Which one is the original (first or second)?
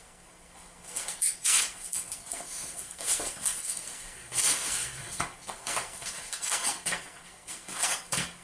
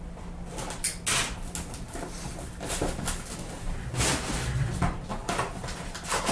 second